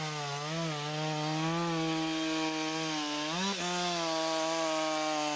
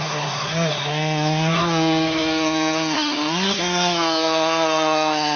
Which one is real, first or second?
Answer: first